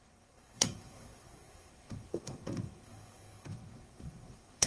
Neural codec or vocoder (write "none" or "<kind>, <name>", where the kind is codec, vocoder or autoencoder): codec, SNAC